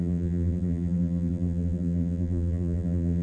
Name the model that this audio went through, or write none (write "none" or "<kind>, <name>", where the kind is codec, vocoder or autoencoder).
vocoder, BigVGAN v2